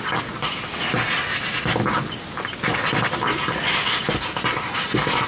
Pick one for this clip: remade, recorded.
recorded